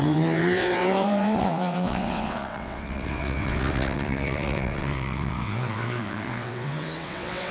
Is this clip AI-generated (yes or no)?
yes